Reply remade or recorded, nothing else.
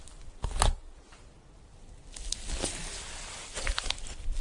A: recorded